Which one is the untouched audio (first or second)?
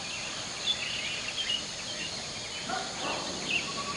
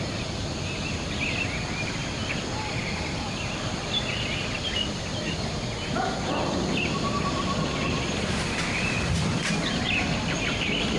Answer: first